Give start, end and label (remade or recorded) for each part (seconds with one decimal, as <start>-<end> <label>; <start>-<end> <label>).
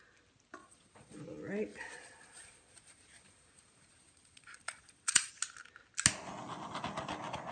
0.0-0.6 recorded; 0.6-1.2 remade; 1.2-1.7 recorded; 1.7-5.3 remade; 5.3-7.5 recorded